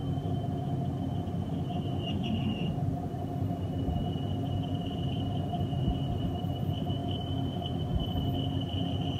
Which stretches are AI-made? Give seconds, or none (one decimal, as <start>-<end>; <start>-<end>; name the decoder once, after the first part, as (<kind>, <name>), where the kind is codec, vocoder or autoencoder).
none